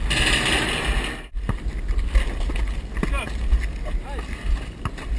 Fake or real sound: real